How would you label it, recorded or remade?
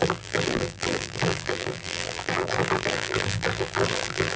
remade